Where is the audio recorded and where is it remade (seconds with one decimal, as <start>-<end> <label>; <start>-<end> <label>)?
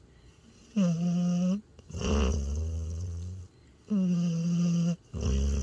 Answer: 0.0-1.7 recorded; 1.7-3.4 remade; 3.4-5.6 recorded